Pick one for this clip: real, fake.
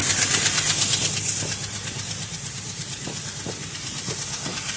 real